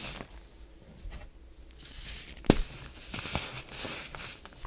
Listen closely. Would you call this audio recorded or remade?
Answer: recorded